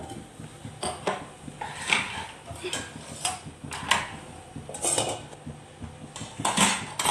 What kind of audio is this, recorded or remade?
recorded